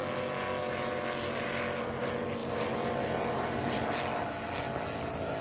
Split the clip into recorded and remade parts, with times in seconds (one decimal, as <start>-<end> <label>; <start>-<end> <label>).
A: 0.0-2.4 recorded; 2.4-4.0 remade; 4.0-5.4 recorded